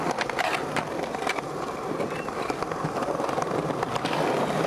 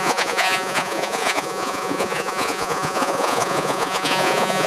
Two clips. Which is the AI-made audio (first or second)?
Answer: second